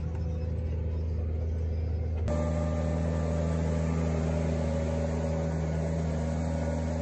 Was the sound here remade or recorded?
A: recorded